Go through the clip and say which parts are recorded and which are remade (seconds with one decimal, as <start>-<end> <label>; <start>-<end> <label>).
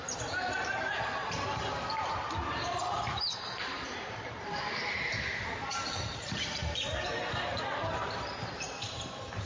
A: 0.0-5.1 remade; 5.1-5.7 recorded; 5.7-9.5 remade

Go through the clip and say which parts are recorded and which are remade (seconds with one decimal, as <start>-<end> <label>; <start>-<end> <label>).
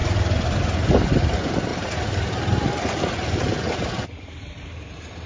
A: 0.0-0.6 recorded; 0.6-5.3 remade